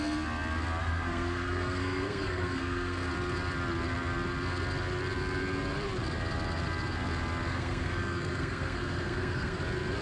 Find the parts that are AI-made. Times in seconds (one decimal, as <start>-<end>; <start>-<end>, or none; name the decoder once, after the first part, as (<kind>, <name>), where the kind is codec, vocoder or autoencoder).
0.8-3.1 (codec, SNAC); 7.5-9.6